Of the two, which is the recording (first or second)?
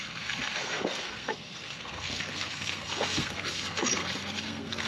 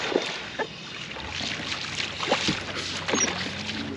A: second